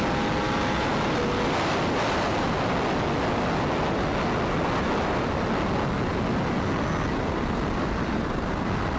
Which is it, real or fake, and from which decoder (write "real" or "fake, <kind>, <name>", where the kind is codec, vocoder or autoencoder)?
real